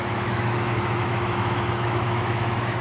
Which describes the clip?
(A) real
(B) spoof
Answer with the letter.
B